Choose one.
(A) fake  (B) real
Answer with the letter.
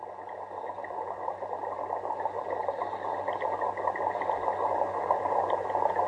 B